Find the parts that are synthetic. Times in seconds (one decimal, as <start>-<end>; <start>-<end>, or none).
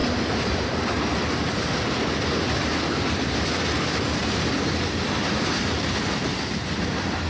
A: 0.8-4.2; 6.6-7.3